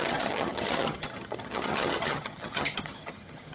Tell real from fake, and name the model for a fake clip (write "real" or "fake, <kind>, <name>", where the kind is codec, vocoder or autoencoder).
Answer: fake, vocoder, HiFi-GAN